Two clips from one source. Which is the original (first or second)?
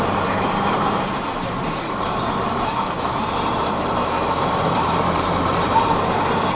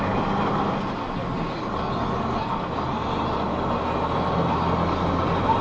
second